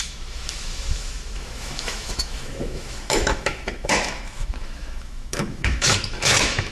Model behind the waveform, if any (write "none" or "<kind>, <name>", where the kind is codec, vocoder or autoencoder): autoencoder, DAC-VAE